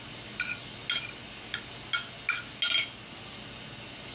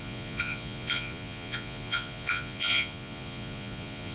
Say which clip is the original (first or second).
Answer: first